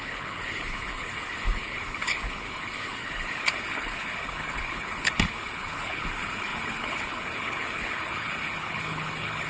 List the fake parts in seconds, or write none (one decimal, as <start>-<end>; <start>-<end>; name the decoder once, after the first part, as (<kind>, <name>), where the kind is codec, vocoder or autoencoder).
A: 0.0-9.5 (codec, HILCodec)